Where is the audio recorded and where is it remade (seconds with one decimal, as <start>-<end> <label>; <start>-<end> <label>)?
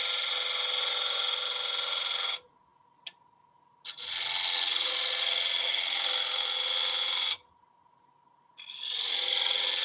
0.0-9.8 recorded